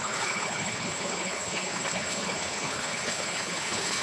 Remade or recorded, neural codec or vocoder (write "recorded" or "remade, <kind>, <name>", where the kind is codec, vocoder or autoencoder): remade, codec, HILCodec